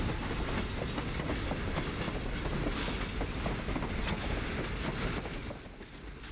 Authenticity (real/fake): real